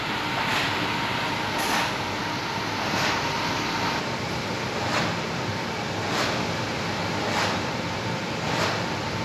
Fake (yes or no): no